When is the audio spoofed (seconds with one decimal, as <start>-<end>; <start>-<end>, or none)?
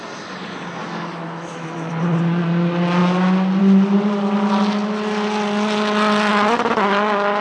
0.8-1.9